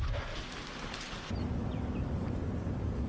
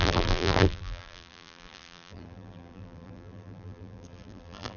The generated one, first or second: second